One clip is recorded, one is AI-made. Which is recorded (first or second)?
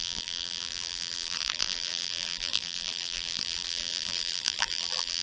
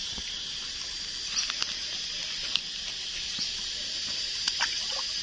second